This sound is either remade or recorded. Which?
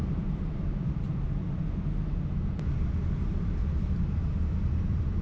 recorded